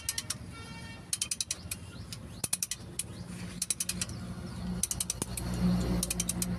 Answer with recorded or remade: recorded